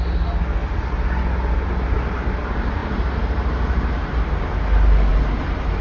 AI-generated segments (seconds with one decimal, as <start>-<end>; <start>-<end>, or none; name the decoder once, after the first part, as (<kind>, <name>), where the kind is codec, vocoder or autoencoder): 2.8-4.3 (vocoder, BigVGAN v2); 5.1-5.8